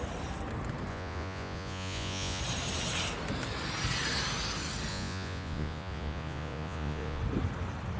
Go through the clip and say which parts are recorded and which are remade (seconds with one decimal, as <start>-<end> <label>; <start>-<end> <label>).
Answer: 0.0-0.9 recorded; 0.9-2.4 remade; 2.4-4.9 recorded; 4.9-7.2 remade; 7.2-8.0 recorded